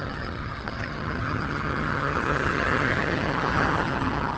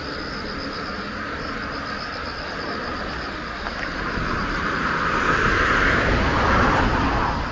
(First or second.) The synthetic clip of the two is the first